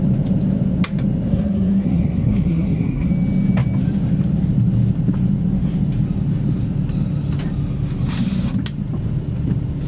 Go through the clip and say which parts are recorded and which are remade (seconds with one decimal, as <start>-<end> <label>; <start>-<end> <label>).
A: 0.0-1.3 recorded; 1.3-3.1 remade; 3.1-9.9 recorded

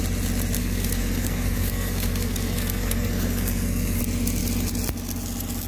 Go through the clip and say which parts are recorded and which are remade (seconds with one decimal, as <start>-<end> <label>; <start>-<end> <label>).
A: 0.0-0.6 recorded; 0.6-4.0 remade; 4.0-5.7 recorded

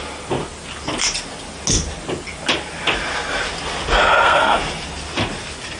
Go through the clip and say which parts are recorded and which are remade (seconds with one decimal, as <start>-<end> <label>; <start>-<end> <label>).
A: 0.0-4.0 recorded; 4.0-4.6 remade; 4.6-5.8 recorded

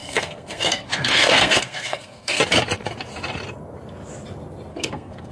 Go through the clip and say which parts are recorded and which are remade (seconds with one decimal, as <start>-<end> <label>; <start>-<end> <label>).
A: 0.0-2.4 remade; 2.4-4.7 recorded; 4.7-5.3 remade